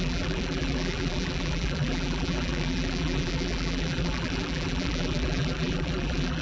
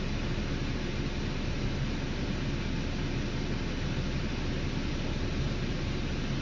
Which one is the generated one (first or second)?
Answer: first